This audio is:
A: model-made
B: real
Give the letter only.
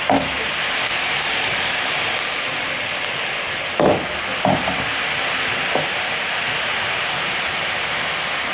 B